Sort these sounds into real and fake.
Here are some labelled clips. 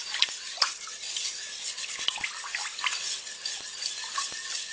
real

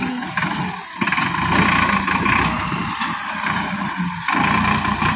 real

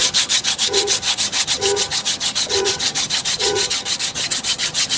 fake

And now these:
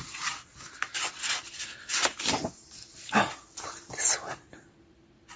real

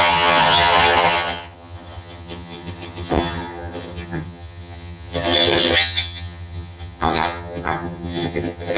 fake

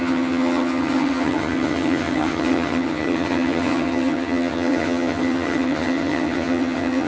fake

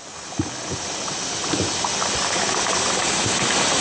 real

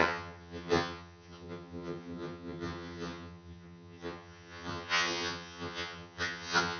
fake